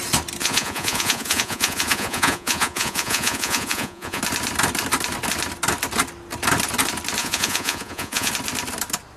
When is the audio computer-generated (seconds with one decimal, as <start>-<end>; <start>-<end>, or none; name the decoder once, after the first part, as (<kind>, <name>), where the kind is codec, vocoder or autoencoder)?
0.4-4.2 (vocoder, Vocos); 7.2-8.3